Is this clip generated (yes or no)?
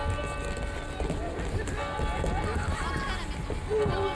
no